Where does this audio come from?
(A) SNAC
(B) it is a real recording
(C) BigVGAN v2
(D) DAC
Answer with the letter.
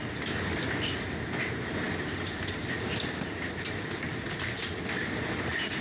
B